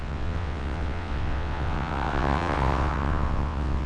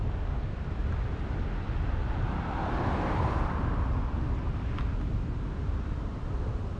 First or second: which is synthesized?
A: first